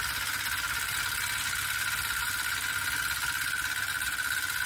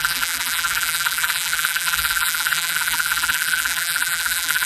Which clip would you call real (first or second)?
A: first